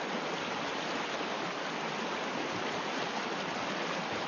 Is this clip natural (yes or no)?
yes